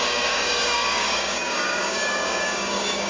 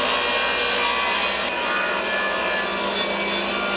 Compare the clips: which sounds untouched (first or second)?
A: second